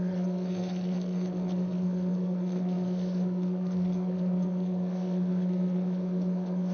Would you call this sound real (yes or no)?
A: no